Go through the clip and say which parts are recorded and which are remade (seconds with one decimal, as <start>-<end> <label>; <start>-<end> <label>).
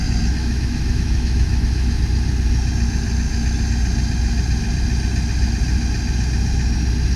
0.0-0.4 recorded; 0.4-2.0 remade; 2.0-7.2 recorded